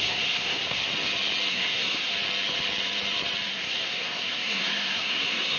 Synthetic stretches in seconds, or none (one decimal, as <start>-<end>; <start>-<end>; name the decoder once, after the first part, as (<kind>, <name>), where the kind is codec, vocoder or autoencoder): 0.0-0.8 (codec, SNAC); 1.5-2.1; 3.5-5.6